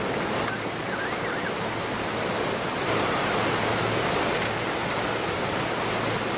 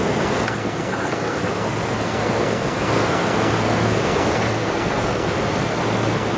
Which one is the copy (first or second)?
second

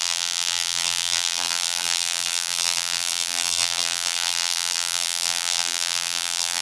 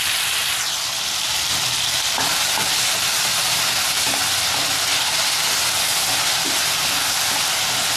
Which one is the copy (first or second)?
first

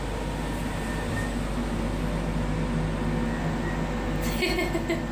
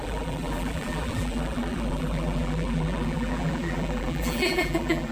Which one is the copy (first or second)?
second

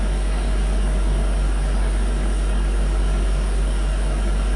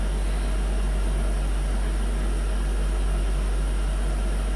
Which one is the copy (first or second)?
first